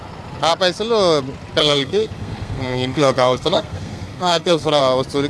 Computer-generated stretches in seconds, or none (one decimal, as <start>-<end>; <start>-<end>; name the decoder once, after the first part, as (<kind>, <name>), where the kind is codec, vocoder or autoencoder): 1.6-4.8 (codec, SNAC)